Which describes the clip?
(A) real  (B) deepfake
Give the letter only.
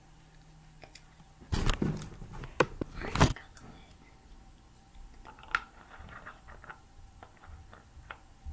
A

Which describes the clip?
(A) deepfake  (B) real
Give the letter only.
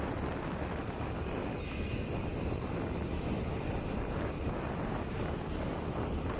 B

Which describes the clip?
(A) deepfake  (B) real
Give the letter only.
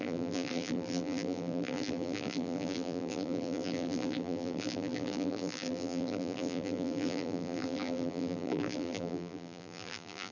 A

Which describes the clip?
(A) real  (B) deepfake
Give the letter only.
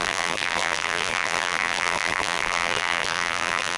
B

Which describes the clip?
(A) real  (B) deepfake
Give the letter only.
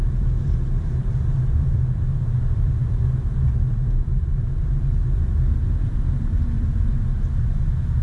B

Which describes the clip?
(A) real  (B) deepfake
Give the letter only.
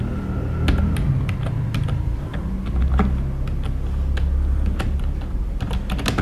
A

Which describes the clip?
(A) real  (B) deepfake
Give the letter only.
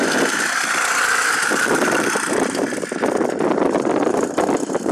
B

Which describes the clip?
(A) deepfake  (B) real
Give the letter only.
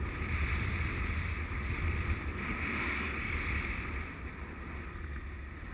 B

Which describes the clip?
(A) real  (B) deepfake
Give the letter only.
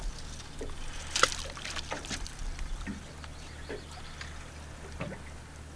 A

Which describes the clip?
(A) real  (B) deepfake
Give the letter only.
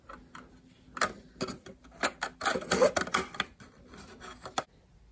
A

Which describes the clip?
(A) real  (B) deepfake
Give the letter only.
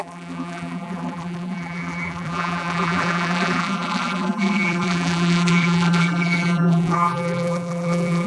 B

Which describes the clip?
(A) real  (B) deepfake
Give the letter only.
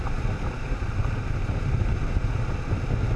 A